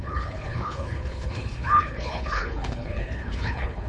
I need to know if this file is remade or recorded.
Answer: remade